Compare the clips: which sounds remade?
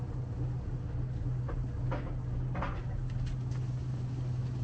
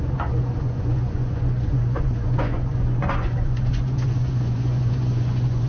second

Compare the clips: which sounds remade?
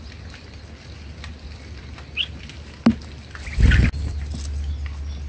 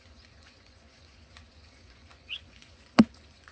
second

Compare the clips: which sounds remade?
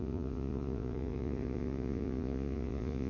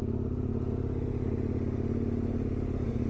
first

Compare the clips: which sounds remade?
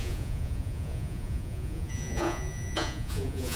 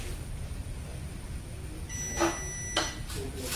first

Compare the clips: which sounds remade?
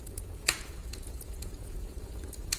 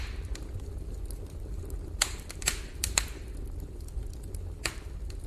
first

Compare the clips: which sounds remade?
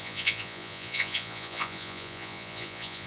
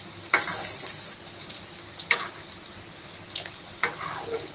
first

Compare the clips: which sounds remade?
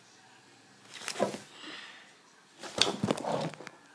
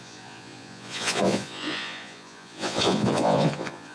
second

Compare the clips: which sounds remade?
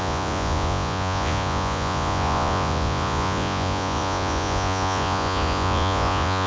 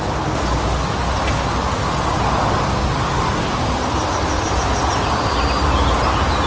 first